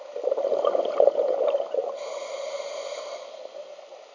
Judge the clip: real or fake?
real